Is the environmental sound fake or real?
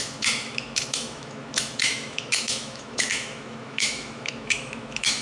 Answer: fake